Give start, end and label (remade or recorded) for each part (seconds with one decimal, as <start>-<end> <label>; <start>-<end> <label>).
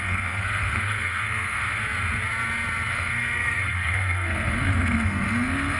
0.0-1.8 remade; 1.8-2.9 recorded; 2.9-5.8 remade